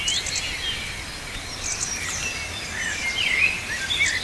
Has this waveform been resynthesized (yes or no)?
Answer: no